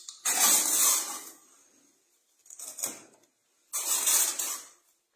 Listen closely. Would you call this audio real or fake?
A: real